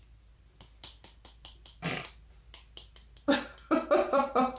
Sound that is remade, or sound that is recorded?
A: recorded